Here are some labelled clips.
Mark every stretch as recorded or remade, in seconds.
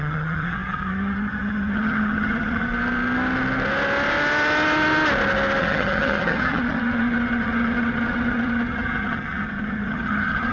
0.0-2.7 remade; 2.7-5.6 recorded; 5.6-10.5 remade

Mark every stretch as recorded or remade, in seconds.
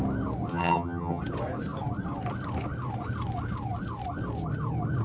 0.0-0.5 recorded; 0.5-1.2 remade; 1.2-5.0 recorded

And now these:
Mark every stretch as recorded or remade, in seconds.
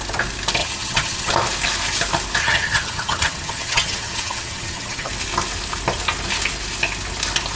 0.0-0.6 recorded; 0.6-1.3 remade; 1.3-2.4 recorded; 2.4-5.1 remade; 5.1-7.6 recorded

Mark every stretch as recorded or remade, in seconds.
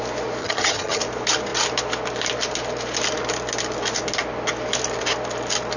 0.0-0.4 recorded; 0.4-1.0 remade; 1.0-5.8 recorded